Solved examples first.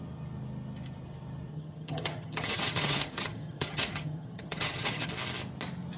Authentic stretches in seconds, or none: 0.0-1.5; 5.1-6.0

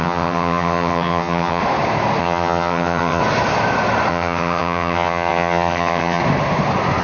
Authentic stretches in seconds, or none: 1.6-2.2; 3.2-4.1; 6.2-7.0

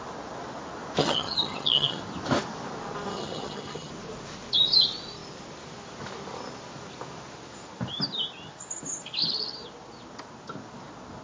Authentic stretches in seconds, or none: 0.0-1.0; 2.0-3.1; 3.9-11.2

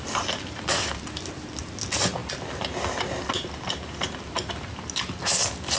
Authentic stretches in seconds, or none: 0.0-5.8